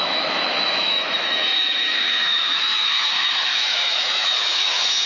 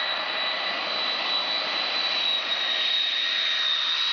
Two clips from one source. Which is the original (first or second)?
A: second